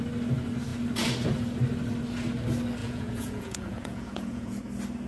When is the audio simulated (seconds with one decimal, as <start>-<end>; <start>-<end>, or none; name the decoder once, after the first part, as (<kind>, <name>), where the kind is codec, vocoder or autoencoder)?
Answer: 2.8-4.6 (vocoder, Vocos)